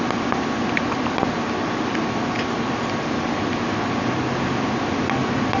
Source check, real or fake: real